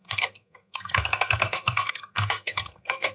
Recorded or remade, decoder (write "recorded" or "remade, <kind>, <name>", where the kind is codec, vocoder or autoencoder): remade, codec, SNAC